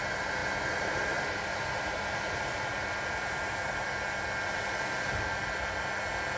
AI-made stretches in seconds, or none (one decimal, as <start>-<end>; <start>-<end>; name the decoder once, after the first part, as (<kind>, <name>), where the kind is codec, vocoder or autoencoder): 0.4-4.2 (vocoder, BigVGAN v2)